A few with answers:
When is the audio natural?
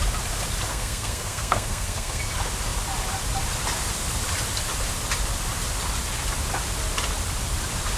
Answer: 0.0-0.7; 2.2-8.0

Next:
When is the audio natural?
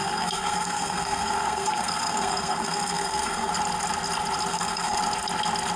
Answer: 3.5-4.5; 5.0-5.8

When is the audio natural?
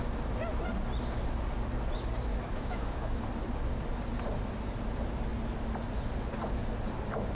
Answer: 0.0-2.3; 3.2-7.3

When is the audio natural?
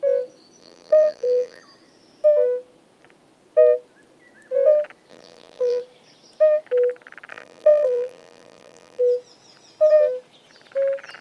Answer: 0.0-0.6; 1.6-5.1; 5.8-7.3; 9.0-11.2